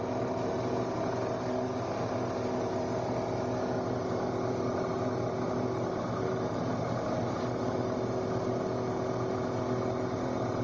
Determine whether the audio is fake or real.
real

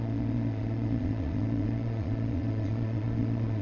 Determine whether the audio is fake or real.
fake